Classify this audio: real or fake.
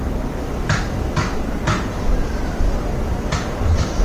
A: real